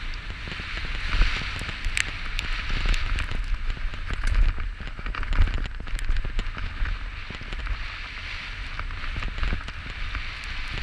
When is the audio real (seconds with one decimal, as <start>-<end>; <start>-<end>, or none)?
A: 0.0-10.8